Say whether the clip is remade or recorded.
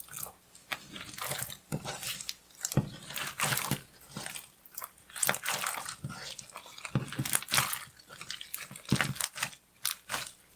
recorded